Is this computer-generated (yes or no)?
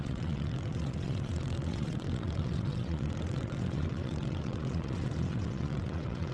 yes